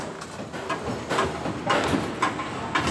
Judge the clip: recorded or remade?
recorded